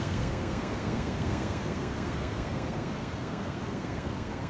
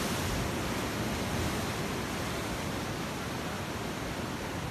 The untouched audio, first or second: second